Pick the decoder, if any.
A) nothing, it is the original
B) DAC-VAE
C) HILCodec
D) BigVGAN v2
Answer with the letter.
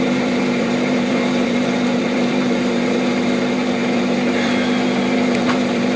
D